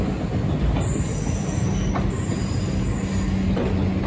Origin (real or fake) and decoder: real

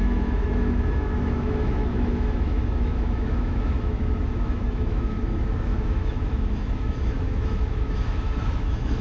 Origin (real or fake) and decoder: fake, autoencoder, DAC-VAE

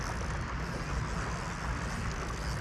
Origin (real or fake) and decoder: real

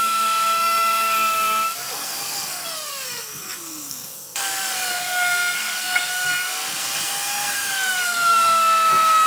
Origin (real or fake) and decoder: fake, codec, SNAC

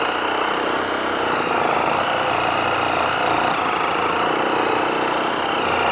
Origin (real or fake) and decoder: real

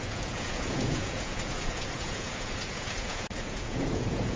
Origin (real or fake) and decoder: fake, vocoder, Vocos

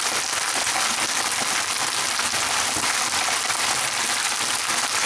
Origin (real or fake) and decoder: real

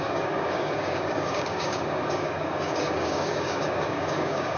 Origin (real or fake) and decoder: fake, codec, DAC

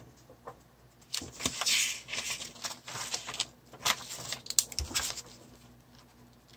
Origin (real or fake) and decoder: real